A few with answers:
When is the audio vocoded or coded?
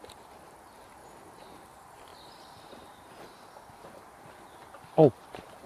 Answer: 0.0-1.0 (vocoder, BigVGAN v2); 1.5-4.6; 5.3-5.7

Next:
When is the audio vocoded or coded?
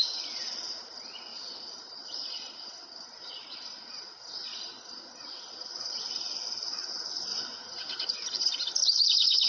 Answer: 1.3-4.7 (vocoder, BigVGAN v2)